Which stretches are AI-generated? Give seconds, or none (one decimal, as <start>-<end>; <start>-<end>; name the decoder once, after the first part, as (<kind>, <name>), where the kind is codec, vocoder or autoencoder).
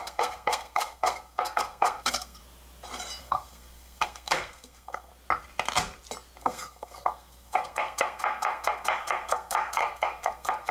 0.0-2.4 (codec, SNAC); 3.2-5.1; 6.4-10.7